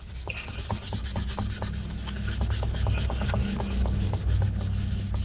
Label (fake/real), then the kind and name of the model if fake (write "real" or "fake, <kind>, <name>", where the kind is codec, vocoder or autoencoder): fake, codec, DAC